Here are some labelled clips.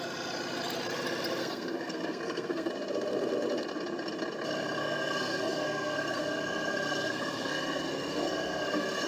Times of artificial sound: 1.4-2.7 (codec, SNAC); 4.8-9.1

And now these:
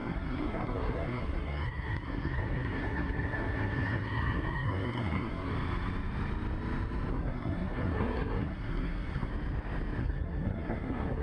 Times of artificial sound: 0.0-5.5 (codec, SNAC); 7.1-9.3; 10.0-11.2

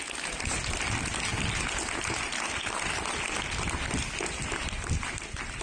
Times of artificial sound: none

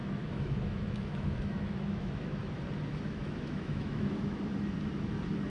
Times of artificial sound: 0.0-2.4 (autoencoder, DAC-VAE); 2.9-4.4

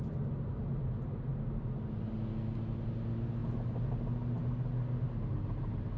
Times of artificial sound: none

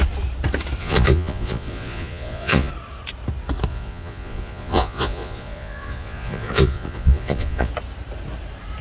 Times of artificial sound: 0.8-2.7 (vocoder, Vocos); 3.7-7.7

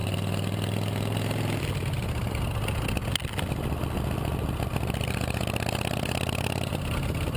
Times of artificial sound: 0.0-1.7 (vocoder, BigVGAN v2)

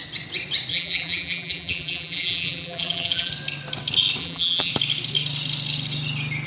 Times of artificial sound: 0.7-3.3 (vocoder, BigVGAN v2); 4.2-4.7